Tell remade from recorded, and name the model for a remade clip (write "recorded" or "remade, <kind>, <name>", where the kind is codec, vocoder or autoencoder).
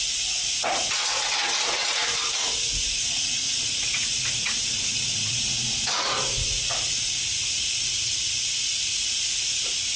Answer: remade, vocoder, Vocos